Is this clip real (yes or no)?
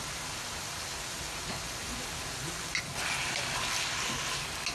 yes